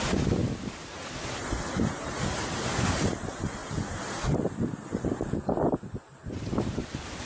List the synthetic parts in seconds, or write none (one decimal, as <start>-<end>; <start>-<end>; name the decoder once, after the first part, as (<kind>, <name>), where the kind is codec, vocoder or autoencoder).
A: none